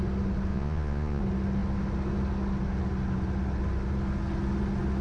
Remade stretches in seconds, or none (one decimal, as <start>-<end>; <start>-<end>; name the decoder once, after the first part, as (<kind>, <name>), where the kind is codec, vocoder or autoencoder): 0.5-1.2 (vocoder, Vocos)